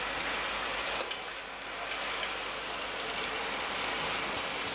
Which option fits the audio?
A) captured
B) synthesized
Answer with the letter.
A